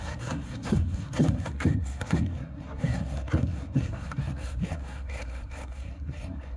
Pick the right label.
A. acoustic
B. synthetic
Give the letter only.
B